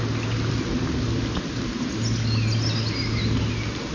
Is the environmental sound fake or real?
real